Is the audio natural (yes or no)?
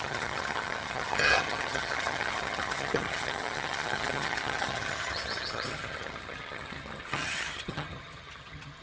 no